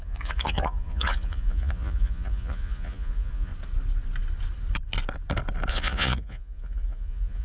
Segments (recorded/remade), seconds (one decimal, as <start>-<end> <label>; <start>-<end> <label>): 0.0-3.5 remade; 3.5-5.7 recorded; 5.7-7.4 remade

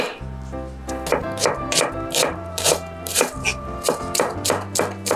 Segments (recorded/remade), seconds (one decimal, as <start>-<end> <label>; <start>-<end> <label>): 0.0-1.2 recorded; 1.2-4.3 remade; 4.3-5.2 recorded